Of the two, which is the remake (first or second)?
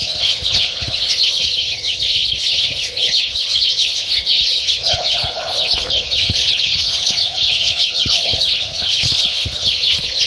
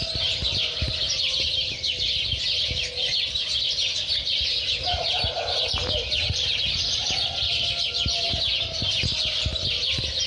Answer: first